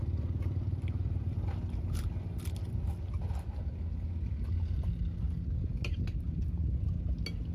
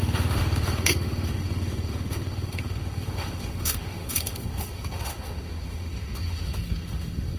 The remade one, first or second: second